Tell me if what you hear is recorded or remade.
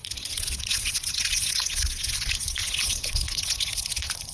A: remade